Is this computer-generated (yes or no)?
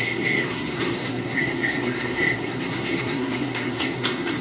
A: yes